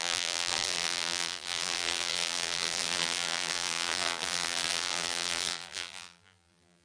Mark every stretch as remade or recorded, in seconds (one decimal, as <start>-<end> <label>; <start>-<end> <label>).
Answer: 0.0-6.8 remade